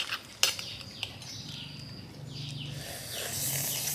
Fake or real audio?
real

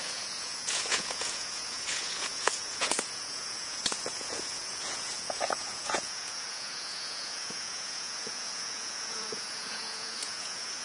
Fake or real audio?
fake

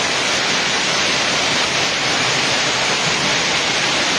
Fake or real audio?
real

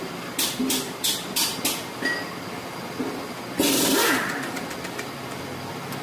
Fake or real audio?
real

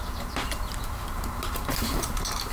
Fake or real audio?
fake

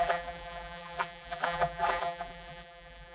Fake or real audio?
fake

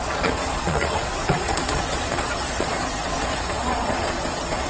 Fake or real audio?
fake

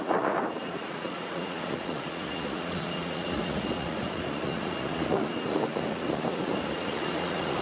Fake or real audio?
fake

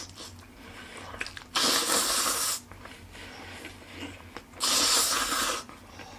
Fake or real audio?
real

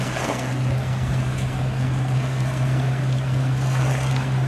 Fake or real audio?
fake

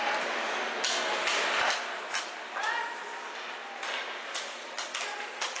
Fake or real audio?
real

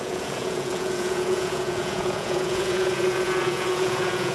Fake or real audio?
fake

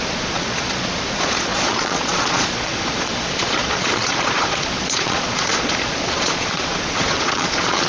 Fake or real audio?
fake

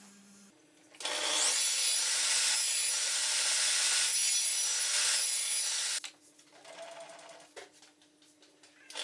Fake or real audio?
real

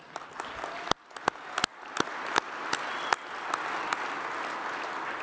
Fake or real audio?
real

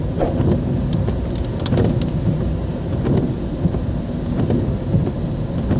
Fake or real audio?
real